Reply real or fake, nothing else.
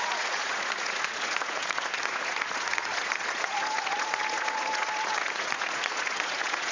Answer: fake